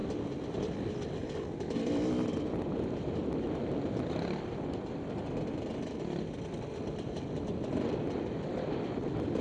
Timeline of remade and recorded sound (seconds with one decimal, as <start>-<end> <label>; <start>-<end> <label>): 0.0-9.4 recorded